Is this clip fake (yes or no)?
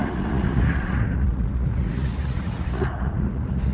yes